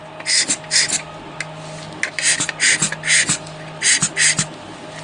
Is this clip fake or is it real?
real